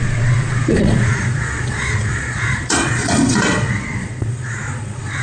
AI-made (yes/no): yes